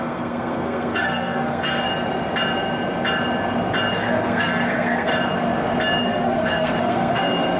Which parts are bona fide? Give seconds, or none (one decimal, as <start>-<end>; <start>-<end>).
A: 1.9-3.9; 5.1-6.0